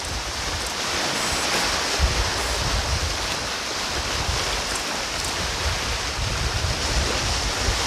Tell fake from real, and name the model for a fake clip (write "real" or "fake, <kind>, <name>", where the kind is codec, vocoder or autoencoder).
real